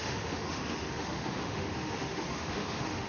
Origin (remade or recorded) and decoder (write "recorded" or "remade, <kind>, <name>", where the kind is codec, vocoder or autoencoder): remade, autoencoder, DAC-VAE